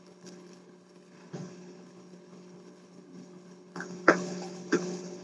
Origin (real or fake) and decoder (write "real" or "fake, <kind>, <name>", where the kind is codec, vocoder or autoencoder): fake, codec, HILCodec